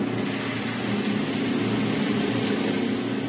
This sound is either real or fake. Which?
real